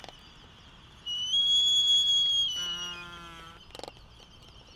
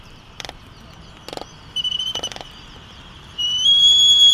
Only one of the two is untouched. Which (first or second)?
first